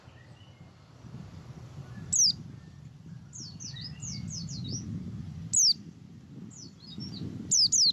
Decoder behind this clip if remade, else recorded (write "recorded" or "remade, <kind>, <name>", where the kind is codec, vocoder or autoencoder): recorded